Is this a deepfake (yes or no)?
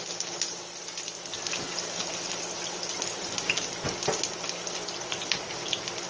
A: no